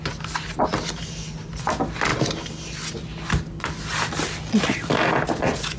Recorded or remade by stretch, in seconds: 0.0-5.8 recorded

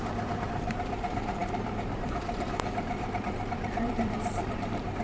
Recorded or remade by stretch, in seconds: 0.0-5.0 remade

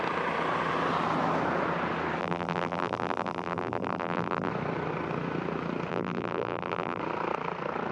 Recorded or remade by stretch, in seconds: 0.0-2.2 recorded; 2.2-4.5 remade; 4.5-5.9 recorded; 5.9-7.0 remade; 7.0-7.9 recorded

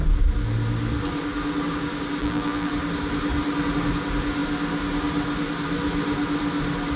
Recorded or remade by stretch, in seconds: 0.0-2.2 recorded; 2.2-2.7 remade; 2.7-7.0 recorded

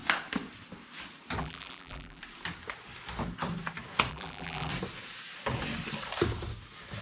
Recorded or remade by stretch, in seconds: 0.0-1.4 recorded; 1.4-2.2 remade; 2.2-4.1 recorded; 4.1-4.7 remade; 4.7-7.0 recorded